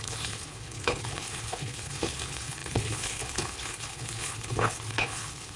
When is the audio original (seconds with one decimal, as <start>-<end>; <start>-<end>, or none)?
none